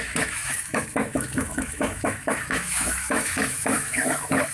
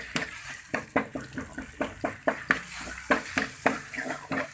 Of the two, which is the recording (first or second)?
second